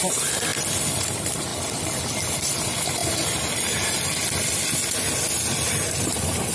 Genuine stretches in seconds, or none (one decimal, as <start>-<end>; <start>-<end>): 0.5-1.0; 1.5-2.3; 3.0-6.0